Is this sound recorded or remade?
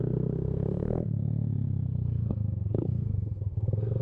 remade